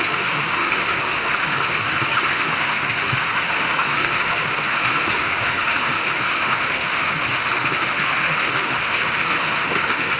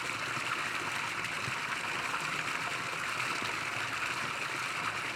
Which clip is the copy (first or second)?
first